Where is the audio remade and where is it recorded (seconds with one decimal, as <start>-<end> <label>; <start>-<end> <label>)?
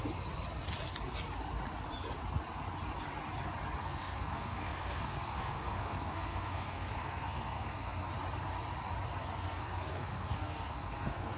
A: 0.0-3.8 recorded; 3.8-8.1 remade; 8.1-9.2 recorded; 9.2-11.4 remade